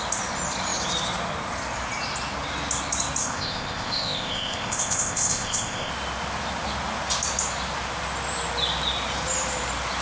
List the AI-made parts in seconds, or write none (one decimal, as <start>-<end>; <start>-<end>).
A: 3.2-5.9